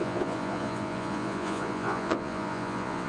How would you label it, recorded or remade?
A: remade